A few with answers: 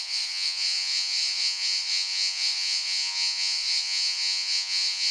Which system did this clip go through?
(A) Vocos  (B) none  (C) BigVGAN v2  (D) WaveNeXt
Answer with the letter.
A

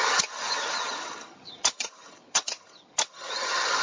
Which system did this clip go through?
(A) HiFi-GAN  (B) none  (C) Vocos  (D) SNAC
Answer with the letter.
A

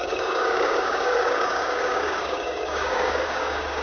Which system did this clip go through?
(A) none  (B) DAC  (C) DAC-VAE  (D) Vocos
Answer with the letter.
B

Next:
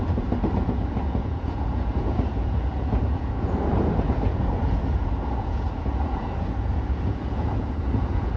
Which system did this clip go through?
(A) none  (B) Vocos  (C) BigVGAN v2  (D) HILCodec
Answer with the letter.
B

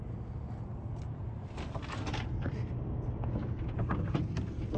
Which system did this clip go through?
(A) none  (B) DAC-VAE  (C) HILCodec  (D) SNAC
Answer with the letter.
A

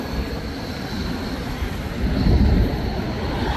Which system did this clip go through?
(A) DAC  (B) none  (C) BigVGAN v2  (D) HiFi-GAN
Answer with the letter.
C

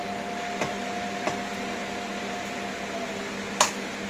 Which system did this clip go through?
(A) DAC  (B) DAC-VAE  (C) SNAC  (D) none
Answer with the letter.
D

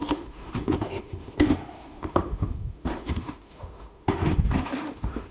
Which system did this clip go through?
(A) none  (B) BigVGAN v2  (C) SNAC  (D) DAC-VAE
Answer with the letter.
D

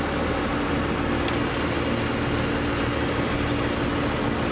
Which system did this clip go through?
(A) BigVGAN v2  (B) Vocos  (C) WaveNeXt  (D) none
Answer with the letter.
D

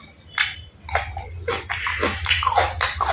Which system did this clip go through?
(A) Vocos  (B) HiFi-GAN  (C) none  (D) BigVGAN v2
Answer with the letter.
C